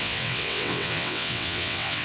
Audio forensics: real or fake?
fake